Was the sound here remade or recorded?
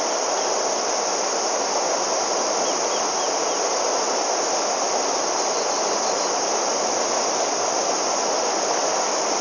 recorded